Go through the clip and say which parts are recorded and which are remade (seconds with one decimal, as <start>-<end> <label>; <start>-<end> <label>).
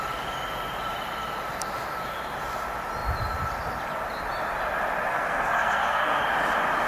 0.0-5.1 recorded; 5.1-6.2 remade; 6.2-6.9 recorded